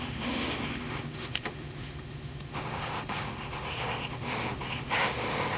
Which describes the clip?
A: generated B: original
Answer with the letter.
A